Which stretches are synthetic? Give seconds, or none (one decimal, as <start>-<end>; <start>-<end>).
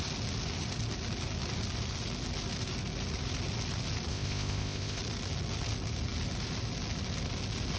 4.1-5.0